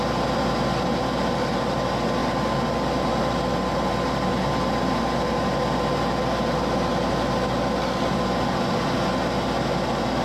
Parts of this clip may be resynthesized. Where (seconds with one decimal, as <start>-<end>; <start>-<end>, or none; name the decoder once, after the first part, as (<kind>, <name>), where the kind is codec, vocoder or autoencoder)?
none